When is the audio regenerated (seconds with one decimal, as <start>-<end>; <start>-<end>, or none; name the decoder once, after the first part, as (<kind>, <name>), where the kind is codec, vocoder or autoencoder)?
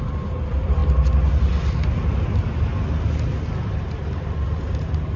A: 0.0-0.8 (vocoder, BigVGAN v2); 3.4-5.2